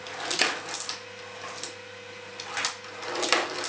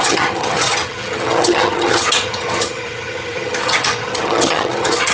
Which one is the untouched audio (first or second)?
first